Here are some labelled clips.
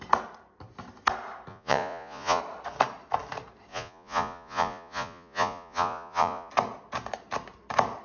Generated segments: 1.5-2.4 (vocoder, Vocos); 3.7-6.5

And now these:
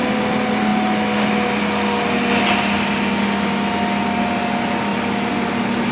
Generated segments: 4.9-5.5 (vocoder, BigVGAN v2)

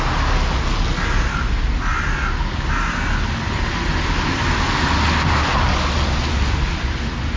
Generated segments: none

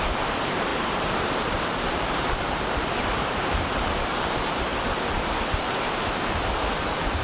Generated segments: 0.0-4.7 (vocoder, BigVGAN v2); 5.5-7.2

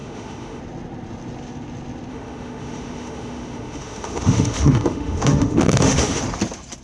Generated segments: 0.0-0.6 (autoencoder, DAC-VAE); 2.1-6.2

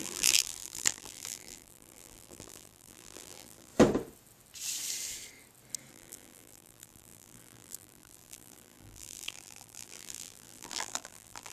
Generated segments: 0.0-3.7 (vocoder, BigVGAN v2); 5.9-11.5

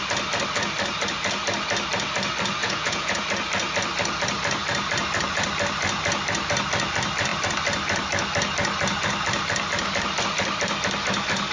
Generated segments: 2.6-3.2 (vocoder, Vocos)

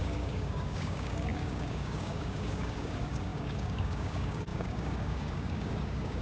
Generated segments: 0.0-6.2 (codec, DAC)